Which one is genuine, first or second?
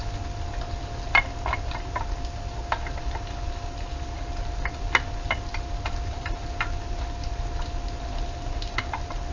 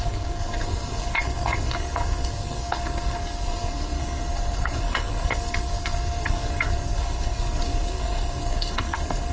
first